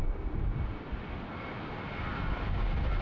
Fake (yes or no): no